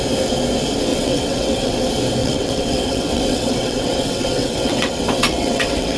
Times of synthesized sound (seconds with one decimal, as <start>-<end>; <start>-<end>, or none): 0.9-1.8; 2.2-6.0